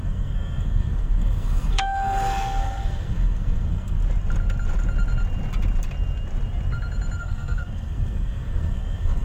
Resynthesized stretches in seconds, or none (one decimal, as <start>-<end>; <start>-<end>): 0.0-4.0; 7.2-9.2